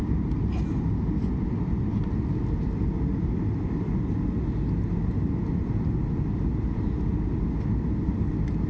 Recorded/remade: recorded